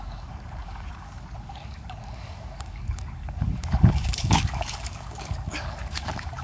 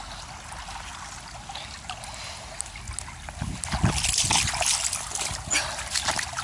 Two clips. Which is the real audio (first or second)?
second